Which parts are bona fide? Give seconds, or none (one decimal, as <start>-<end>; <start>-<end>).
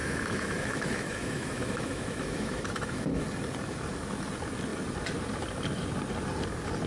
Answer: 3.2-6.9